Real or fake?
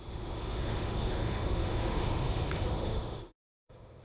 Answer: fake